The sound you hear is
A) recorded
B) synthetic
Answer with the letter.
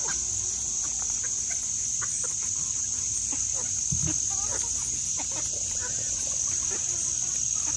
A